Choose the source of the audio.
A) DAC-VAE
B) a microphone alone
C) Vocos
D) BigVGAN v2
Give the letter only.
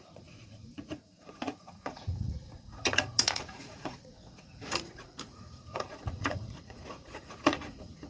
C